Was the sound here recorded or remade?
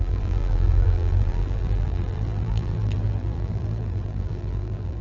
remade